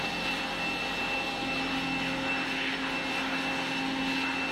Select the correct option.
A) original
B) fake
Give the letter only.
A